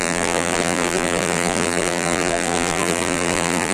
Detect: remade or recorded remade